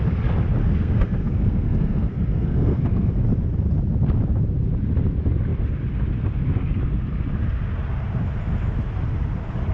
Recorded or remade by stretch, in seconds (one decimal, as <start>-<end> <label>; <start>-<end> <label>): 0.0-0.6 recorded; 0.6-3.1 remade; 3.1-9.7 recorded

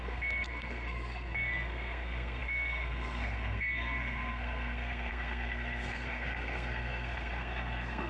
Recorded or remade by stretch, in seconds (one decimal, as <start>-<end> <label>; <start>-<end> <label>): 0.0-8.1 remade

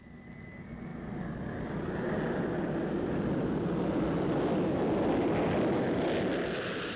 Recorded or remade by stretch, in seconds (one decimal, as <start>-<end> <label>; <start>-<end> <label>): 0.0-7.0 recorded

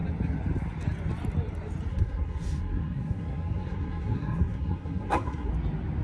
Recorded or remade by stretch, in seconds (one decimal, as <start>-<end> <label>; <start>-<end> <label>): 0.0-1.9 recorded; 1.9-5.5 remade; 5.5-6.0 recorded